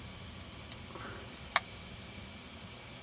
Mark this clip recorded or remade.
recorded